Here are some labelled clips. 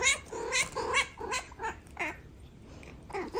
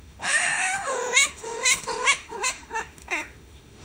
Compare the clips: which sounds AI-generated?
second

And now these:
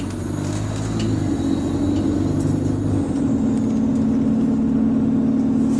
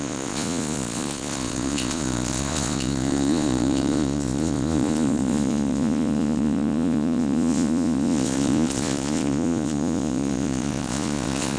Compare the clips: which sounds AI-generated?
second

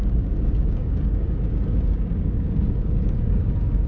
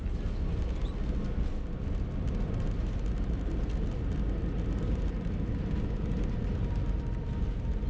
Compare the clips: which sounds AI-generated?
first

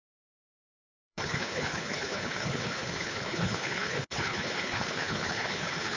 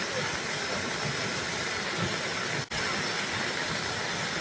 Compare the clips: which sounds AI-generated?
first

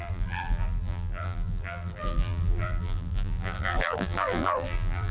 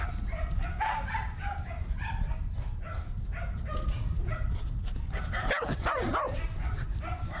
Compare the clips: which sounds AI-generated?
first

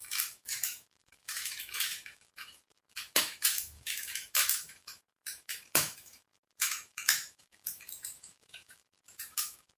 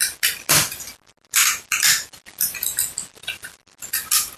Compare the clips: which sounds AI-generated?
first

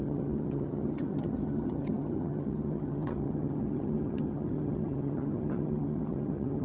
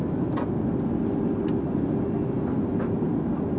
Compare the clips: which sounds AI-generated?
first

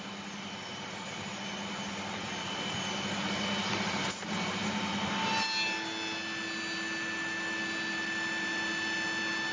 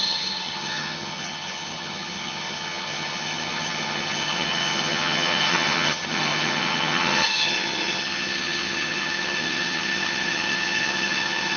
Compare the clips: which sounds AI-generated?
second